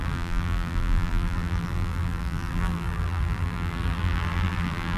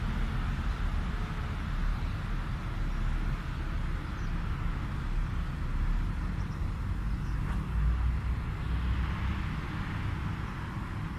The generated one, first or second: first